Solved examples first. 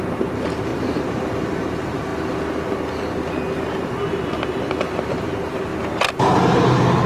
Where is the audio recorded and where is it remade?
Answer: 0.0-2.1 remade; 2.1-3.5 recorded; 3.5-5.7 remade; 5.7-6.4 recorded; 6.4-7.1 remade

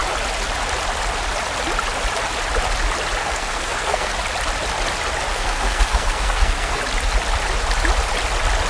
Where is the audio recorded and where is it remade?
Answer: 0.0-3.2 recorded; 3.2-4.1 remade; 4.1-5.3 recorded; 5.3-6.8 remade; 6.8-8.7 recorded

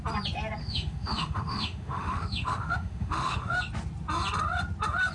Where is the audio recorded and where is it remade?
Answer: 0.0-0.6 recorded; 0.6-3.6 remade; 3.6-5.1 recorded

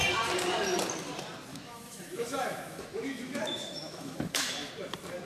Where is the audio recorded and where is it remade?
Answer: 0.0-1.5 recorded; 1.5-4.7 remade; 4.7-5.3 recorded

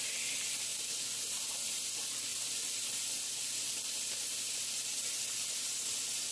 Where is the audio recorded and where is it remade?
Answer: 0.0-6.3 recorded

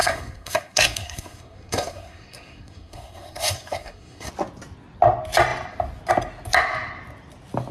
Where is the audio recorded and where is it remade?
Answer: 0.0-4.3 remade; 4.3-7.7 recorded